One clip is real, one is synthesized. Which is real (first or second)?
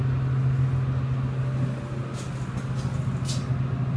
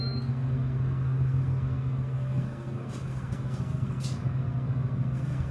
first